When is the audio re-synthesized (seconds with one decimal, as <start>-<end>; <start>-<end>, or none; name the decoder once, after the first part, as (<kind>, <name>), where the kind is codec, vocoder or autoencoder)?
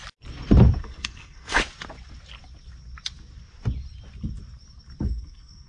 0.8-1.6 (codec, SNAC); 5.0-5.7